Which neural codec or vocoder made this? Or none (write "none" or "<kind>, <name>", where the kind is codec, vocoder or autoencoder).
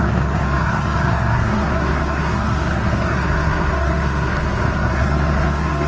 codec, SNAC